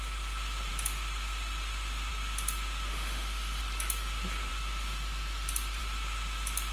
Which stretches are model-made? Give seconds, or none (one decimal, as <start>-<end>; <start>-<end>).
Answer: 2.9-3.6